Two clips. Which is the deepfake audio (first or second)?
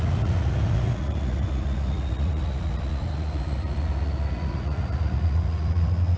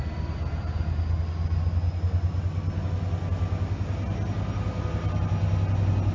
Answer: first